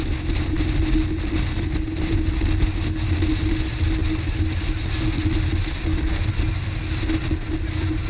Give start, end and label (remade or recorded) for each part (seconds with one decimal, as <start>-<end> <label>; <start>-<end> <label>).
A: 0.0-8.1 recorded